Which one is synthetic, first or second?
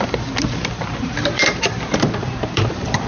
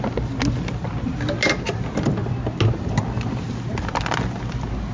first